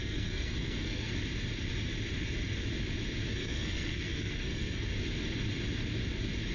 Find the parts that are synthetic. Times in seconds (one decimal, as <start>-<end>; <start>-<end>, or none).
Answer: 0.0-1.1; 3.3-4.9